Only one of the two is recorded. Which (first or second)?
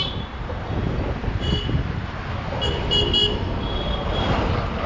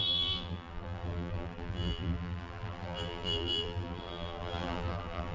first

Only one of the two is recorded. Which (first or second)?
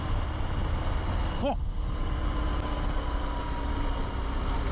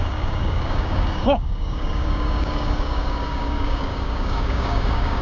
first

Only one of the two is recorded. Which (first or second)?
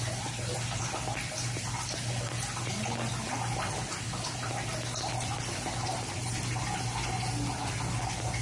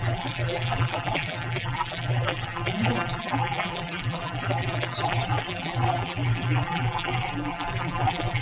first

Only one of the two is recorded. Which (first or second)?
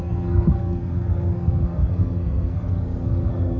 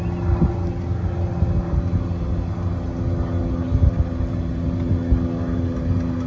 second